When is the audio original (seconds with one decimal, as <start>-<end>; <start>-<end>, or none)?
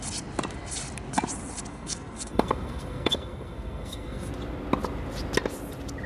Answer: 0.0-1.7; 4.3-6.1